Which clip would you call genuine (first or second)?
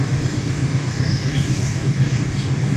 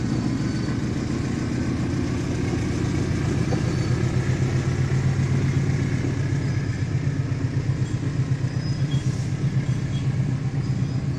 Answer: second